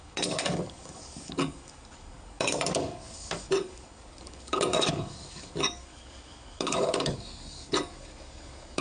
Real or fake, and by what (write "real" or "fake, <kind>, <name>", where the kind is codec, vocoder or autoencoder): fake, codec, DAC